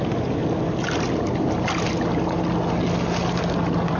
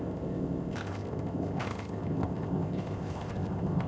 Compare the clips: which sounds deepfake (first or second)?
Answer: second